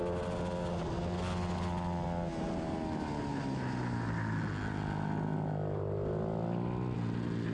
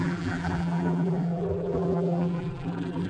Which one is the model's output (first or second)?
second